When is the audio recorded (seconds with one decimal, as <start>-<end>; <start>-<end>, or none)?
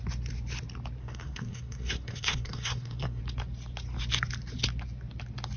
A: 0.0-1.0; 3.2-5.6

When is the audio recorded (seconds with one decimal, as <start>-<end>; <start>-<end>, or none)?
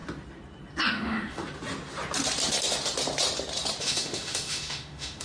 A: 0.0-0.9; 1.4-3.8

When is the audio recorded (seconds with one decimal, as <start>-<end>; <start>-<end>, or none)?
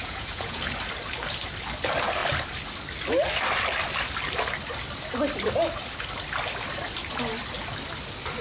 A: 0.6-8.4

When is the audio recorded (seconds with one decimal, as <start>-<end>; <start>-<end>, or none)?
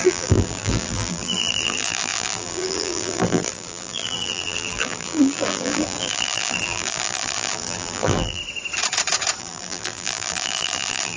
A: 8.4-9.4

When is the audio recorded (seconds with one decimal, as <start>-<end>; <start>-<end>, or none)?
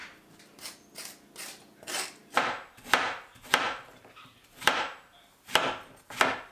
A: 0.0-6.5